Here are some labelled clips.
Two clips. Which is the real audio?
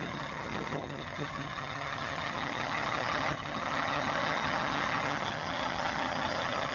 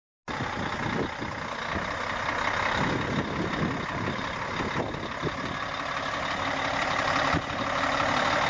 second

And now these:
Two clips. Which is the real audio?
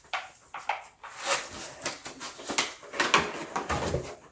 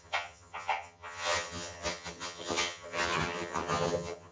first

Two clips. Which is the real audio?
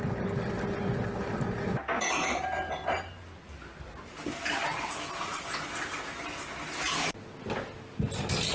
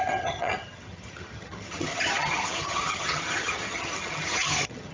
first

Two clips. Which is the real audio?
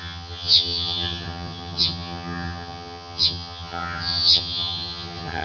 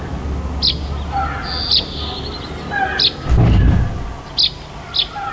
second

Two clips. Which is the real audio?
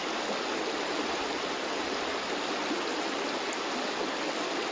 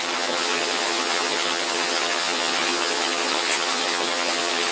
first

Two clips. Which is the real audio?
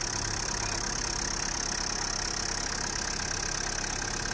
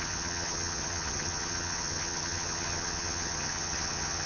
first